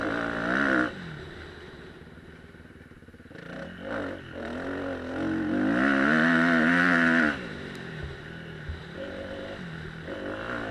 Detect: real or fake real